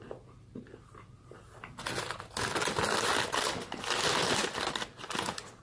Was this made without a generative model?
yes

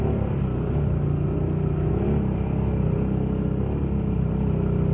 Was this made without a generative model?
yes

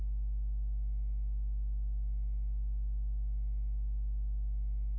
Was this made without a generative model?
yes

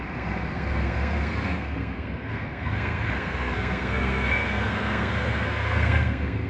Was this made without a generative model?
no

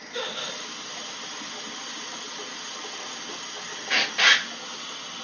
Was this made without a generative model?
yes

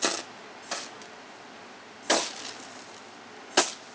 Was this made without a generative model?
yes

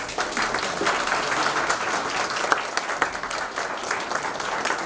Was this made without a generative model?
yes